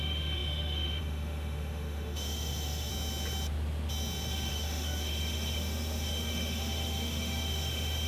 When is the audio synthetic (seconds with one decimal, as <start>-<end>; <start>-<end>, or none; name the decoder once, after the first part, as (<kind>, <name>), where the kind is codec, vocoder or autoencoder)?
0.0-2.9 (autoencoder, DAC-VAE); 4.5-8.1

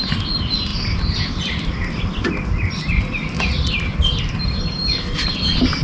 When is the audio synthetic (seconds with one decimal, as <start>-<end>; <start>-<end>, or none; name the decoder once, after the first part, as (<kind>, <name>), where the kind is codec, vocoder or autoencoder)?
none

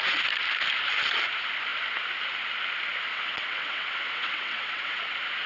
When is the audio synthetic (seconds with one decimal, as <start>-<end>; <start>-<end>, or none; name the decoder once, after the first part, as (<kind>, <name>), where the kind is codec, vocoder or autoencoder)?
3.1-5.0 (vocoder, WaveNeXt)

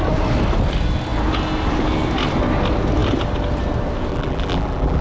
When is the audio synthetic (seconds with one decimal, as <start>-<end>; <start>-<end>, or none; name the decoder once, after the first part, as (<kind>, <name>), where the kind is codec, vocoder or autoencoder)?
4.1-5.0 (vocoder, BigVGAN v2)